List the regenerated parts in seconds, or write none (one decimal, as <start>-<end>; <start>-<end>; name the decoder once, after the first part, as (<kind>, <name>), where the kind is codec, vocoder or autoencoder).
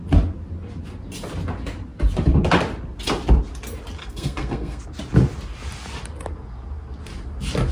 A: 4.0-4.8 (codec, SNAC)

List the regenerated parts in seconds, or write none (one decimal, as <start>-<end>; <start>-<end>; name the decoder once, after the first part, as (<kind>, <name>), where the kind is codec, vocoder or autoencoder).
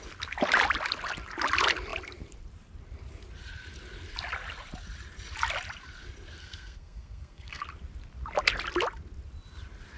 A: 6.4-7.6 (codec, SNAC)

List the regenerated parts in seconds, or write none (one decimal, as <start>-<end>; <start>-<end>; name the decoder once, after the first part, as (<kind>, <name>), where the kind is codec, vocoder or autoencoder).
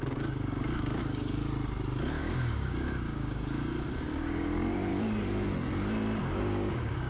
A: 0.0-1.4 (codec, DAC); 2.2-4.9; 6.2-7.1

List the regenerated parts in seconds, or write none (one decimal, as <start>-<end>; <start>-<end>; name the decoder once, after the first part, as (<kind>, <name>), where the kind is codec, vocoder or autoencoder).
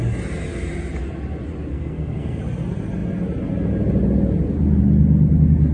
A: 1.7-2.4 (codec, SNAC)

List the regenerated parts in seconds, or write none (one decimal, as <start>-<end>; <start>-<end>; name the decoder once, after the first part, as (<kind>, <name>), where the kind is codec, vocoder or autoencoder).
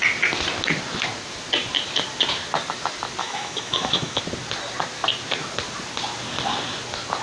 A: 3.2-4.2 (autoencoder, DAC-VAE)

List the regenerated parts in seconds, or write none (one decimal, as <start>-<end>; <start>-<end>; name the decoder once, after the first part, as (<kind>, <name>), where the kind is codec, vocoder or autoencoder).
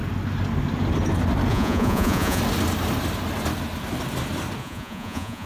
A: 1.5-2.4 (vocoder, Vocos); 4.6-5.5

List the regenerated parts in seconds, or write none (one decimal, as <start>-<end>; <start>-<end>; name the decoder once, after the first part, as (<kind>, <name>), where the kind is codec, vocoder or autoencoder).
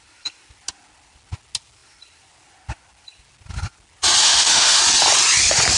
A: 4.2-4.8 (autoencoder, DAC-VAE)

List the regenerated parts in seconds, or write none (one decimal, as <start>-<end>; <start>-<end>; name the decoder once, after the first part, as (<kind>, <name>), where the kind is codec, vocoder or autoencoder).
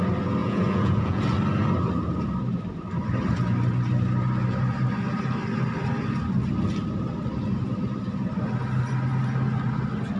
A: 0.4-1.2 (vocoder, Vocos)